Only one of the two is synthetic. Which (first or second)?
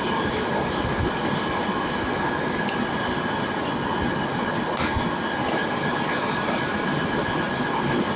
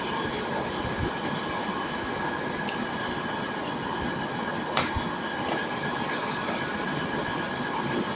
second